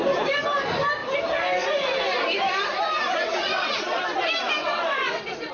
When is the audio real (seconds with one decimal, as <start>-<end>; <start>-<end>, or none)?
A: 0.0-3.2; 4.0-4.6